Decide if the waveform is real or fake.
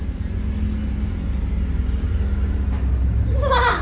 real